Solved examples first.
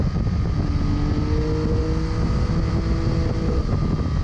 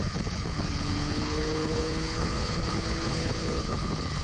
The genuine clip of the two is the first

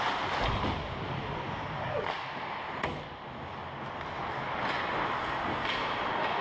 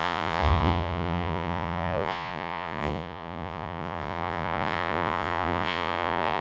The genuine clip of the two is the first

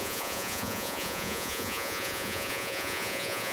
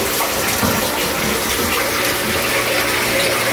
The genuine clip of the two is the second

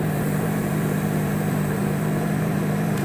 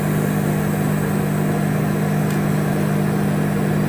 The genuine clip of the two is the second